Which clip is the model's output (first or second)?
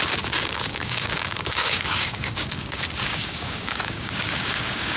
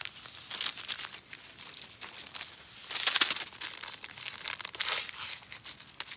first